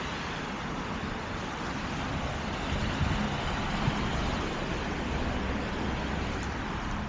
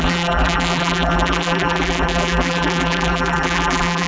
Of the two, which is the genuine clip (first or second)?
first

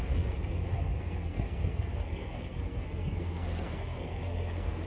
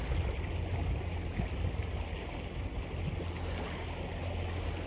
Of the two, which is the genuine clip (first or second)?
second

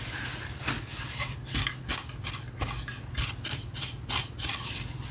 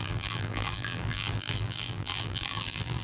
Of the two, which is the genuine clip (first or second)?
first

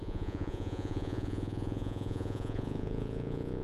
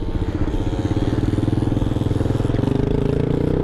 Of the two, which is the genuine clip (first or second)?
second